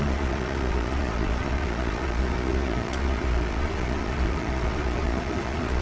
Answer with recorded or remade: remade